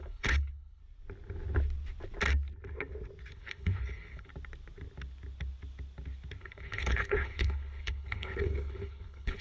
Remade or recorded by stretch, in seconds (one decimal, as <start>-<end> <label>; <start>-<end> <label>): 0.0-0.8 remade; 0.8-3.3 recorded; 3.3-4.3 remade; 4.3-6.4 recorded; 6.4-9.4 remade